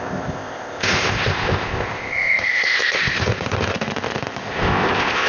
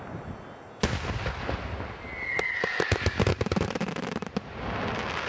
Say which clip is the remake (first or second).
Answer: first